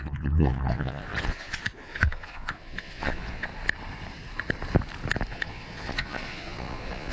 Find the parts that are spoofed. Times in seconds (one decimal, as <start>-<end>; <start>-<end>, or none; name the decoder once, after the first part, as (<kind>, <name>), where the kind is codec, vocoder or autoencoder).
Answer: 0.0-3.5 (vocoder, Vocos); 5.3-7.1